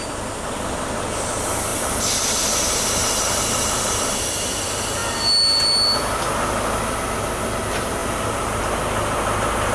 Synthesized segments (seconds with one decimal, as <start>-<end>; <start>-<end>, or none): 1.7-4.0; 8.0-8.6